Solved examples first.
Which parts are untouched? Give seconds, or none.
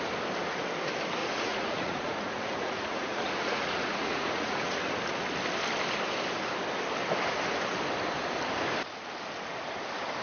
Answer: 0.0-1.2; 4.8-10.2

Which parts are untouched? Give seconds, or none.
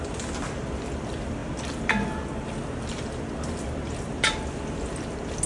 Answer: 0.0-5.5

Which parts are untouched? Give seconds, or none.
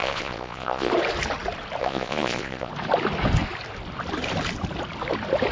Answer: 0.9-1.8; 2.7-5.5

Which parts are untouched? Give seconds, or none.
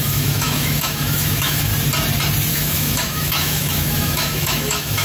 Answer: 1.7-2.5